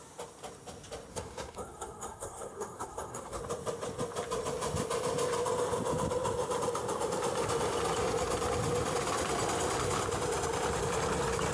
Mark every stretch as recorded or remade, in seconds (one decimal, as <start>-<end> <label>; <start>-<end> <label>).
0.0-1.1 recorded; 1.1-3.4 remade; 3.4-11.5 recorded